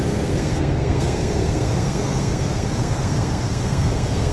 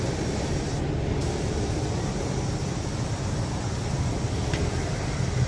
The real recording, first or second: second